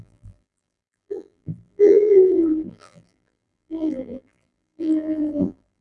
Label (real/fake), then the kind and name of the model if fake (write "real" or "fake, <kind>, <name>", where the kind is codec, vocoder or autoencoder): fake, vocoder, BigVGAN v2